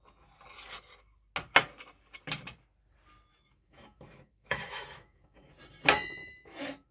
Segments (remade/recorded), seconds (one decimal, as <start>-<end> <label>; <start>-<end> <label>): 0.0-3.3 recorded; 3.3-5.5 remade; 5.5-6.2 recorded; 6.2-6.9 remade